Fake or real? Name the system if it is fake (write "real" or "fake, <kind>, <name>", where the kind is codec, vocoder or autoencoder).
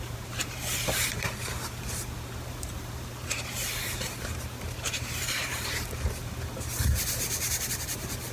fake, vocoder, BigVGAN v2